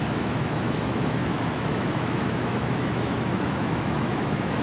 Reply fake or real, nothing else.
fake